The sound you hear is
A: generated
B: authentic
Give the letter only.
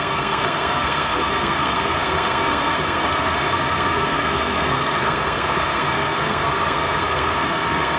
A